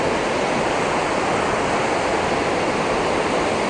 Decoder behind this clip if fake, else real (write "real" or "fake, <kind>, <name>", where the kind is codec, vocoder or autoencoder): real